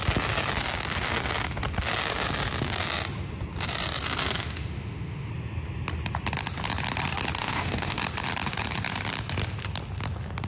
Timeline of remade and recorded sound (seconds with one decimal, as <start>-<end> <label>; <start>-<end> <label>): 0.0-4.4 recorded; 4.4-5.3 remade; 5.3-7.4 recorded; 7.4-8.0 remade; 8.0-10.5 recorded